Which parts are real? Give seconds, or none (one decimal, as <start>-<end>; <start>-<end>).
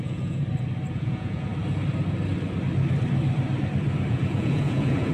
0.4-0.9; 1.5-4.1